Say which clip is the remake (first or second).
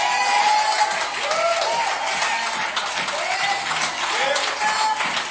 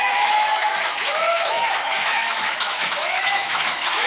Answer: second